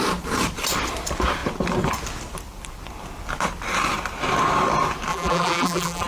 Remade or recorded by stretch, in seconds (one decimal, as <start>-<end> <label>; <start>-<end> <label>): 0.0-5.1 recorded; 5.1-6.1 remade